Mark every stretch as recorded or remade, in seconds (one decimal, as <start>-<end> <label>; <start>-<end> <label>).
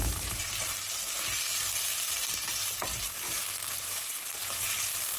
0.0-0.9 remade; 0.9-1.9 recorded; 1.9-2.5 remade; 2.5-2.9 recorded; 2.9-5.2 remade